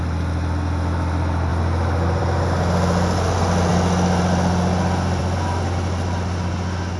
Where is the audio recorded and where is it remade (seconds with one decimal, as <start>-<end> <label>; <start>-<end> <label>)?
0.0-7.0 recorded